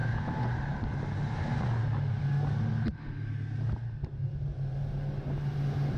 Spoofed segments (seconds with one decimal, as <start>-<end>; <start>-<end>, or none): none

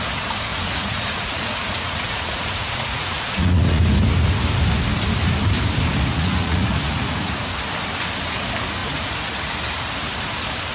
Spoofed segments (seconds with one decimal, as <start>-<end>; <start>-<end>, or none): 0.5-3.8; 6.1-7.6

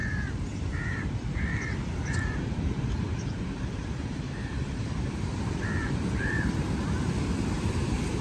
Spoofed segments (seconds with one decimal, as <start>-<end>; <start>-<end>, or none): 0.0-6.8

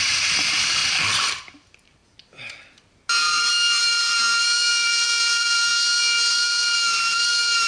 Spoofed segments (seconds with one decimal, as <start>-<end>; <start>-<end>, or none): 0.0-0.8; 1.4-2.0; 3.8-4.2; 4.7-5.7; 6.3-7.7